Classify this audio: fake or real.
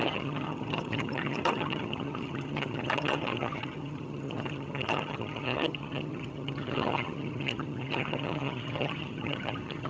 fake